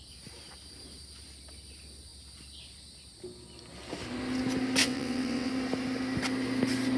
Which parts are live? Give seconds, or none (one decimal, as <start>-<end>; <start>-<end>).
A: 0.0-4.8; 5.5-7.0